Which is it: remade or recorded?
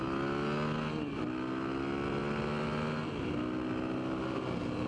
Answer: recorded